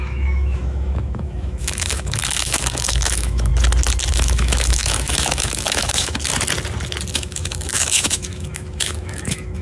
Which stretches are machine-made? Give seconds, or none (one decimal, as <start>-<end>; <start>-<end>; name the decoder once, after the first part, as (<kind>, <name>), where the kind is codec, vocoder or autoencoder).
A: 0.0-3.5 (autoencoder, DAC-VAE); 4.1-6.3; 7.1-9.6